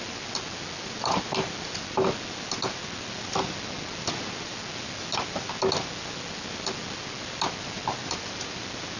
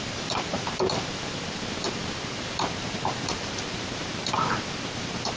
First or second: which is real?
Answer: first